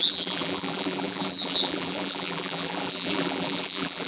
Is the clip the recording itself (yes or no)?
no